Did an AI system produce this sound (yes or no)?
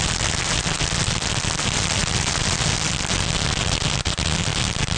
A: no